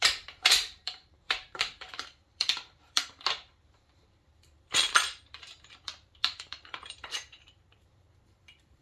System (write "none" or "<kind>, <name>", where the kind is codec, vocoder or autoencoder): vocoder, BigVGAN v2